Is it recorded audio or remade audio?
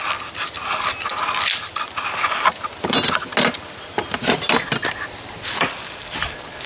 recorded